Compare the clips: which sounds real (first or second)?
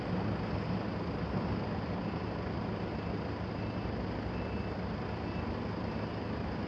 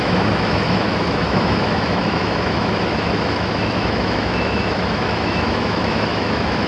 first